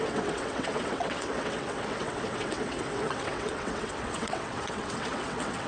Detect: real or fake fake